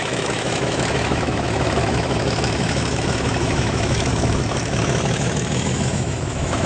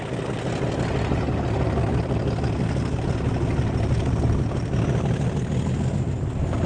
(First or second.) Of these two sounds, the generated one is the first